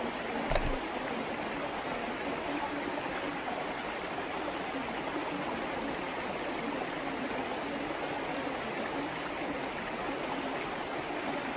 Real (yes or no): yes